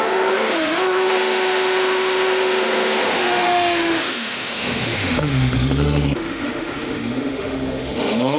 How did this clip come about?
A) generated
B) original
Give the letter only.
A